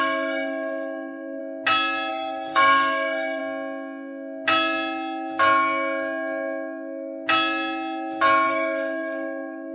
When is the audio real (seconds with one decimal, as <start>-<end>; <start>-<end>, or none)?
1.4-2.1; 3.4-8.5